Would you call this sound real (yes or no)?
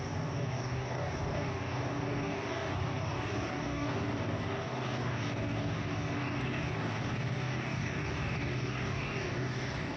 no